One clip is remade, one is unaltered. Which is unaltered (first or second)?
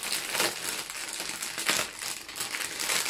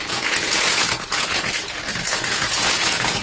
first